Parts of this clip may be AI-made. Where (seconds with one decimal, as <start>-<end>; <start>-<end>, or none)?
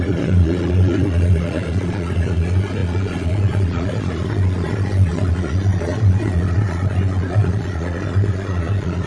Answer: 0.0-9.1